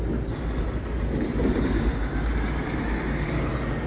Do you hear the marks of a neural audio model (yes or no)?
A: no